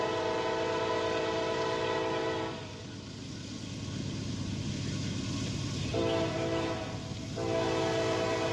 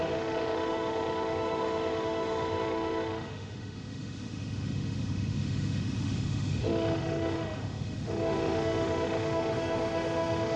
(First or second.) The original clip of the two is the first